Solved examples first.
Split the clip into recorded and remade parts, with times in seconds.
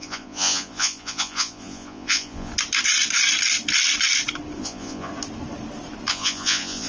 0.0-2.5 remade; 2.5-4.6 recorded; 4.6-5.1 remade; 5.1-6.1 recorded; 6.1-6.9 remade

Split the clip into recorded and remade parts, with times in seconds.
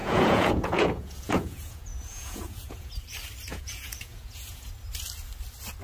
0.0-2.9 remade; 2.9-3.5 recorded; 3.5-4.7 remade; 4.7-5.8 recorded